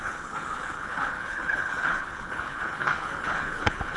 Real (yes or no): no